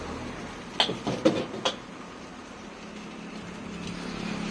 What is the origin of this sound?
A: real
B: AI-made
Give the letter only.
A